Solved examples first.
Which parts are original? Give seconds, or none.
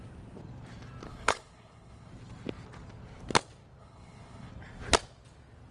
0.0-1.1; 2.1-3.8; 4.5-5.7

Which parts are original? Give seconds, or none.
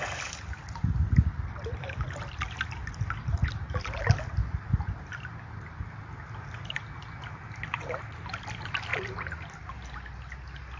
0.0-10.8